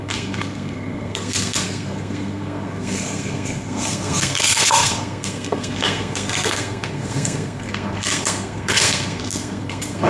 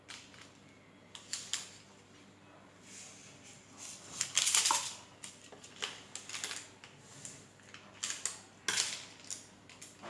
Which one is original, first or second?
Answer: second